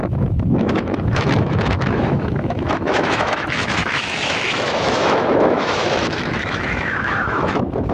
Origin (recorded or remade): remade